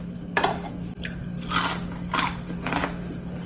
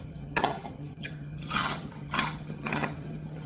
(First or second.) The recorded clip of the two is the first